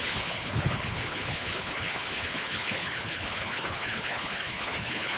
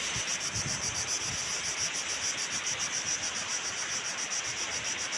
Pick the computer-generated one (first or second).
first